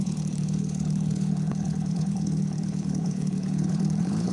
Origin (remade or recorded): remade